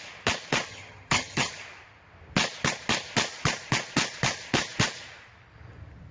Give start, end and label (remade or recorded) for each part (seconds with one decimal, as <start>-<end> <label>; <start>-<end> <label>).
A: 0.0-0.7 recorded; 0.7-1.5 remade; 1.5-6.1 recorded